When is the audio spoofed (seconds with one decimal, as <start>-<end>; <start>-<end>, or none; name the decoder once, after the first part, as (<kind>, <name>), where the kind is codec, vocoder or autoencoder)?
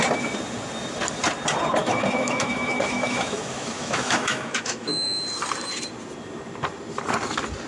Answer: 1.8-5.2 (autoencoder, DAC-VAE)